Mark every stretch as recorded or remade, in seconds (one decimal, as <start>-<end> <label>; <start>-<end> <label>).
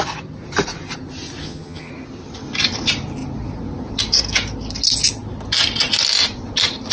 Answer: 0.0-1.4 recorded; 1.4-1.9 remade; 1.9-6.9 recorded